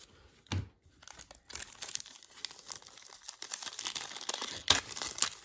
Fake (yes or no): no